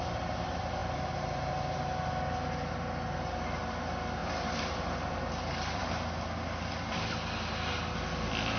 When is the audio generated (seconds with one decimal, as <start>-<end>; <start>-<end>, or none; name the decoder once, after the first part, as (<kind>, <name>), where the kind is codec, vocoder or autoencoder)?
0.8-1.5 (vocoder, BigVGAN v2); 4.2-5.8